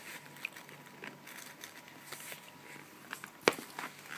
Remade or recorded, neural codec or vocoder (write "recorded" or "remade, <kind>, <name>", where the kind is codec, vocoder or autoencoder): recorded